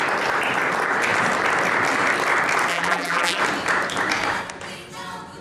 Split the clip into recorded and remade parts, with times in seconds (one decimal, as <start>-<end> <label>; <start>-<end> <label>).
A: 0.0-2.7 recorded; 2.7-3.4 remade; 3.4-5.4 recorded